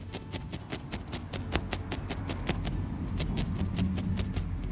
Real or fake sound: real